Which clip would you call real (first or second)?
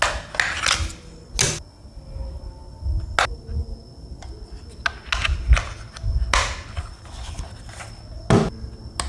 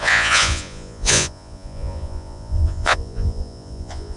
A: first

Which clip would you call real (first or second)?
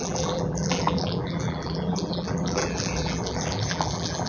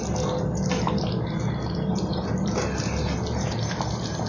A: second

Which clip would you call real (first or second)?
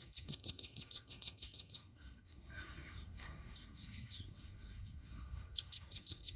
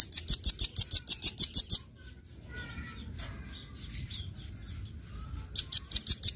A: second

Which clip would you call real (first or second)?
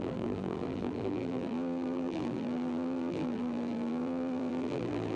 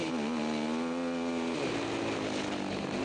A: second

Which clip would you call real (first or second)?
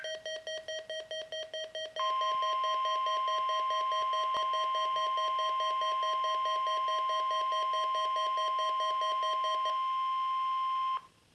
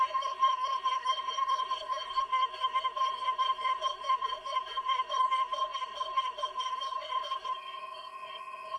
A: first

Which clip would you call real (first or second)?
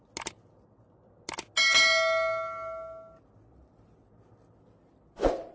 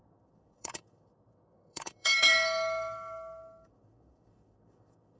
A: first